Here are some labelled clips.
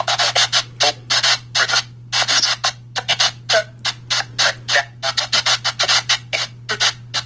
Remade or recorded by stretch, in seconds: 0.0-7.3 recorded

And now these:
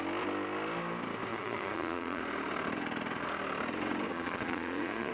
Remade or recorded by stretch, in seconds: 0.0-1.3 recorded; 1.3-2.2 remade; 2.2-4.1 recorded; 4.1-5.1 remade

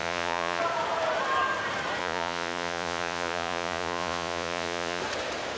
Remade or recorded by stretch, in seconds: 0.0-0.6 remade; 0.6-2.0 recorded; 2.0-5.0 remade; 5.0-5.6 recorded

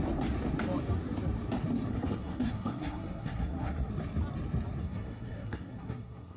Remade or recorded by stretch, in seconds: 0.0-1.9 recorded; 1.9-3.9 remade; 3.9-4.8 recorded; 4.8-6.4 remade

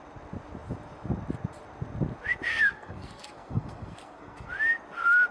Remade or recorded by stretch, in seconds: 0.0-2.5 recorded; 2.5-4.5 remade; 4.5-5.3 recorded